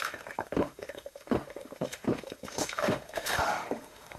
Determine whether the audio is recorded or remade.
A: remade